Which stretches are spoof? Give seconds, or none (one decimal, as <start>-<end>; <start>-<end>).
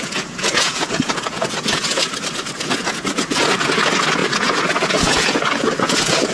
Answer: 0.0-2.0; 2.6-6.3